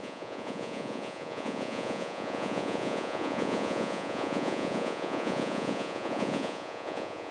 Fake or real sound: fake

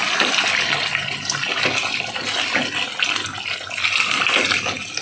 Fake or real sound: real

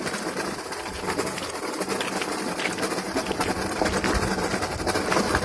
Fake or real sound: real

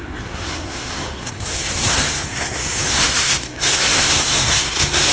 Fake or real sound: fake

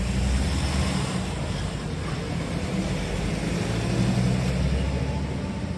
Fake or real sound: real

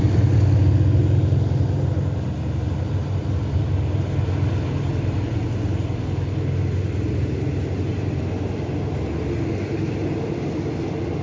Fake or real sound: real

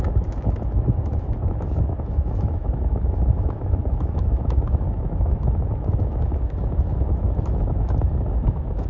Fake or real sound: fake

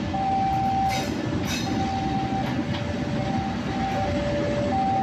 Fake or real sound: real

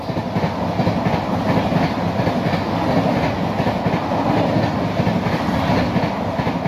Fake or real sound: real